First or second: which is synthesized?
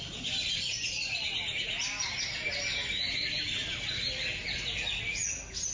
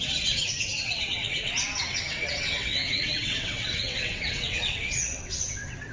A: second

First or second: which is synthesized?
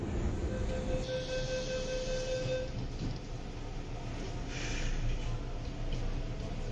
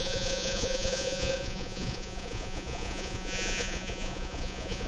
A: second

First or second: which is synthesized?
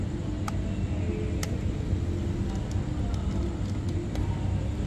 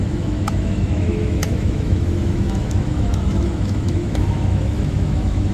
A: second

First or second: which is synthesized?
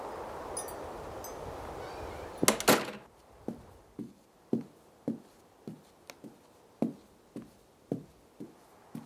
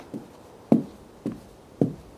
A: second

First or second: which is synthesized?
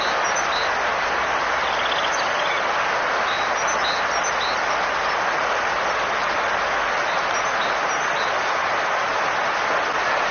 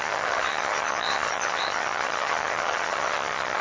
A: second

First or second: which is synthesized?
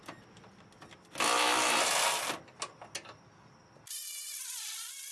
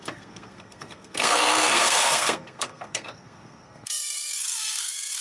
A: second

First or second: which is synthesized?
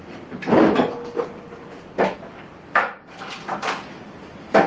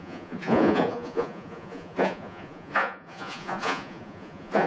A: second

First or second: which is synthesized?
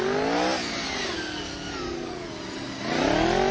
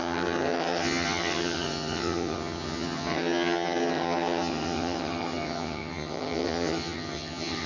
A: second